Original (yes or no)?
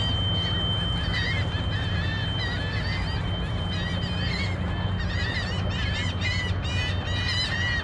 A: yes